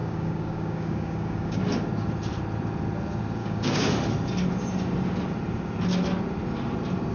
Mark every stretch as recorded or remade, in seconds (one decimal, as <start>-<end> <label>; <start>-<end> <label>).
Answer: 0.0-1.6 remade; 1.6-3.4 recorded; 3.4-3.9 remade; 3.9-7.1 recorded